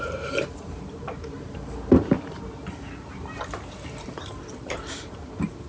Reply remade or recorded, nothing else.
remade